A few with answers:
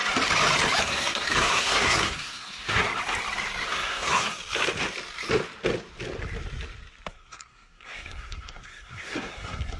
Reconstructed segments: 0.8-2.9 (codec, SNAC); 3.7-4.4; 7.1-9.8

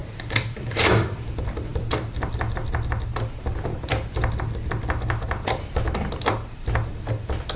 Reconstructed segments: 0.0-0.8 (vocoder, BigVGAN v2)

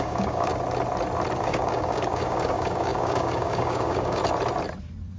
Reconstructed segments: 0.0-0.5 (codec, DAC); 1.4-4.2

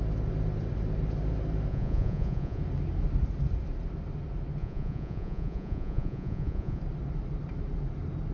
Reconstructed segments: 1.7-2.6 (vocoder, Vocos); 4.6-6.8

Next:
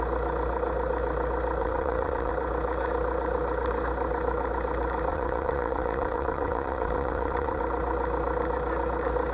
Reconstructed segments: 1.6-2.3 (vocoder, WaveNeXt); 5.1-7.6

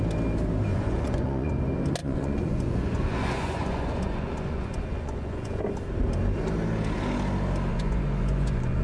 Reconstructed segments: 0.7-1.5 (vocoder, Vocos); 2.0-5.6; 7.7-8.8